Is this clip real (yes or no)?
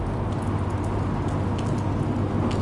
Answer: yes